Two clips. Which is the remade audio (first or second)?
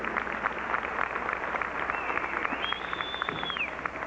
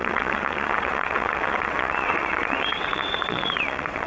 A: second